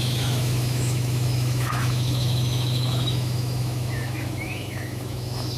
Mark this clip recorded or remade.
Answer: remade